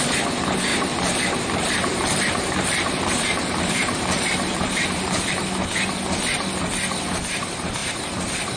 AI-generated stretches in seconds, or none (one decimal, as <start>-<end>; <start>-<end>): 0.7-5.3